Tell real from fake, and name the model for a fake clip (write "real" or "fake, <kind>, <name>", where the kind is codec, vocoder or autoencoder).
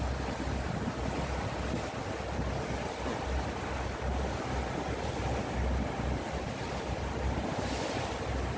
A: real